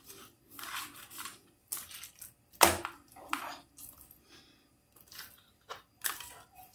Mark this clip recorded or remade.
recorded